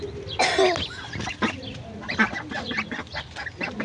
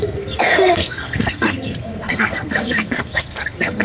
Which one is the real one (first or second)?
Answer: first